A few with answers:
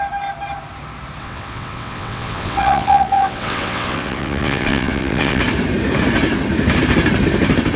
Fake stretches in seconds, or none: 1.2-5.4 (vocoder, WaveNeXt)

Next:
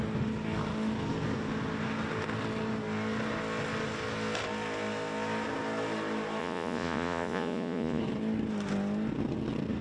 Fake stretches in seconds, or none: 6.4-8.0 (vocoder, Vocos)

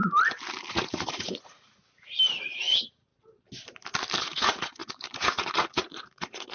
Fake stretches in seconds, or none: 0.7-1.8 (vocoder, Vocos); 2.4-3.1; 4.2-6.5

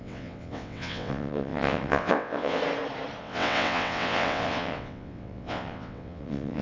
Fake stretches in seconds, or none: 0.0-2.6 (vocoder, WaveNeXt); 3.2-6.6

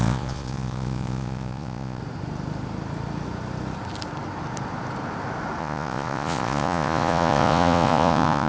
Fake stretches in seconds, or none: 0.0-2.0 (vocoder, Vocos); 5.6-8.5

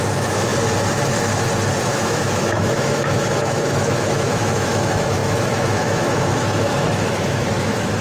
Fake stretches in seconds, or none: 0.0-0.5 (autoencoder, DAC-VAE); 1.8-8.0

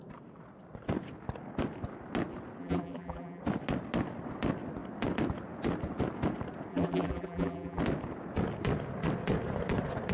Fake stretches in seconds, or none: 2.6-3.4 (vocoder, BigVGAN v2); 6.7-7.8

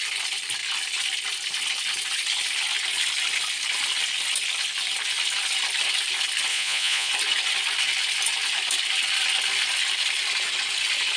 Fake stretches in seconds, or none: 6.5-7.1 (vocoder, Vocos)